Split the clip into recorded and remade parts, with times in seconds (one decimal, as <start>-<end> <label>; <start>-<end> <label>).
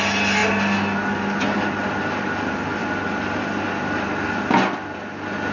0.0-5.5 recorded